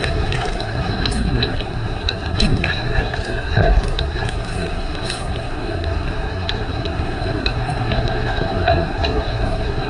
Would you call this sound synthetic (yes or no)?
yes